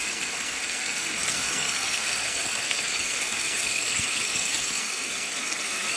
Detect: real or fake fake